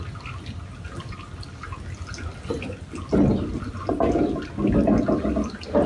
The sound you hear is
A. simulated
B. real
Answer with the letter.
B